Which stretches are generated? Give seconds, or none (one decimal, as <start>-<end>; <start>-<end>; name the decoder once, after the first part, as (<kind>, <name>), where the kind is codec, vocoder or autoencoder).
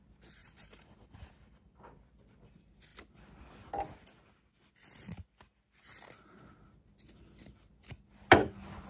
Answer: 0.4-1.8 (vocoder, BigVGAN v2)